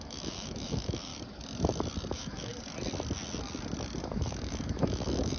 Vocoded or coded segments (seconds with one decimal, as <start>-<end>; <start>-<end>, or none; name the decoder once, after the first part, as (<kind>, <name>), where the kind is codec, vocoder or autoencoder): 0.0-1.1 (autoencoder, DAC-VAE); 2.1-2.5; 4.0-5.4